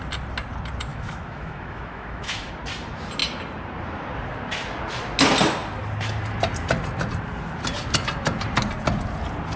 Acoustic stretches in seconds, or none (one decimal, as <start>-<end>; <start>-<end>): 0.0-0.9; 2.5-9.6